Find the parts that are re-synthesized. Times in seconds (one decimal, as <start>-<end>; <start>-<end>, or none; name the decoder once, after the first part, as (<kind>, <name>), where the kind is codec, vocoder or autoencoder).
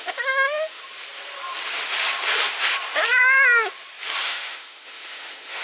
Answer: 0.0-0.8 (autoencoder, DAC-VAE); 4.2-5.6